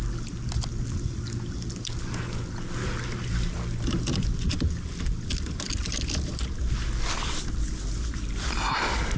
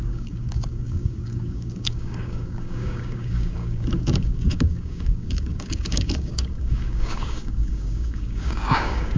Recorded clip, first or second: first